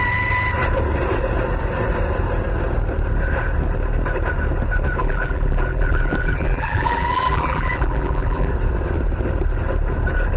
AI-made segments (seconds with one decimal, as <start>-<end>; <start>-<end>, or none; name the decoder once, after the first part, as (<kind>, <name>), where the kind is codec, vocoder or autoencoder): 5.0-8.5 (vocoder, BigVGAN v2)